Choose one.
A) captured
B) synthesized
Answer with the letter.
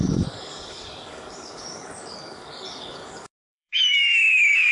B